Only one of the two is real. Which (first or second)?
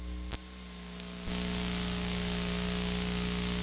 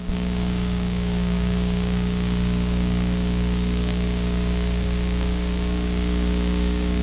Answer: first